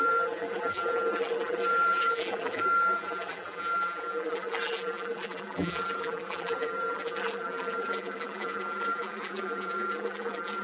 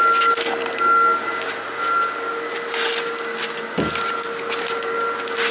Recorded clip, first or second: second